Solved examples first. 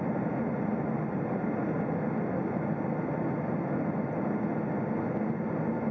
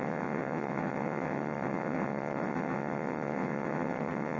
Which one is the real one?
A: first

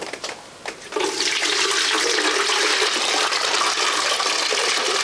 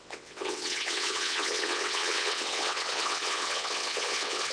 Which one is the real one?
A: first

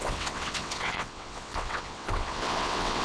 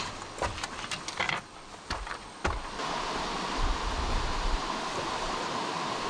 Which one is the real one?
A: second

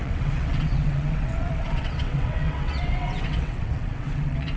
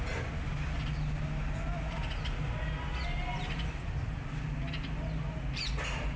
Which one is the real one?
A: second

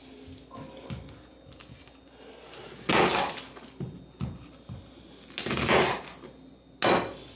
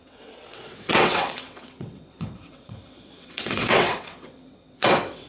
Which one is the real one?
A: first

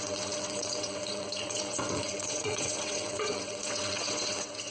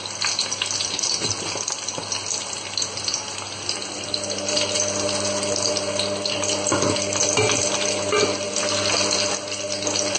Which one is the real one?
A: second